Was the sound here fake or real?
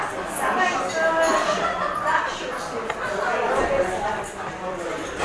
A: real